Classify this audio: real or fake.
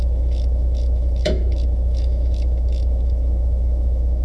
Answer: fake